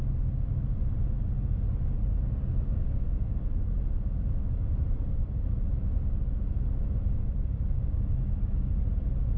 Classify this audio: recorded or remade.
recorded